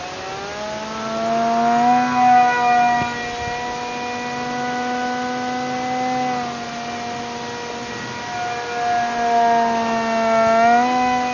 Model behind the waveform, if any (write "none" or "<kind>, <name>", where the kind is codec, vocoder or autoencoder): none